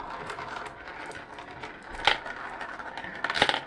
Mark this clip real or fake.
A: real